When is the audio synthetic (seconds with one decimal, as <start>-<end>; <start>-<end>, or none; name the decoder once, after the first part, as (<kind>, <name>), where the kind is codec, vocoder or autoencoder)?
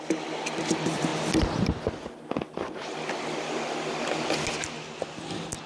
none